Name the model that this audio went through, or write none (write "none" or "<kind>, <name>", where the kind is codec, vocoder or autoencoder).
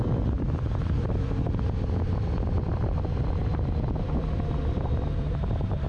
none